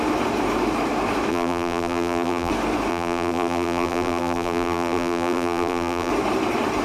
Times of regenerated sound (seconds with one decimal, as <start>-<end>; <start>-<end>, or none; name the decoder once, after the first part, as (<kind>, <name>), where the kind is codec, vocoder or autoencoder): 1.3-2.5 (vocoder, BigVGAN v2); 2.9-6.1